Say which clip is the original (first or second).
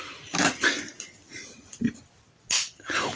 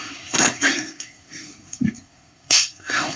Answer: first